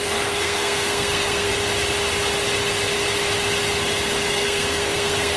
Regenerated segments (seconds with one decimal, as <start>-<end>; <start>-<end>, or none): 0.0-1.5; 4.3-5.4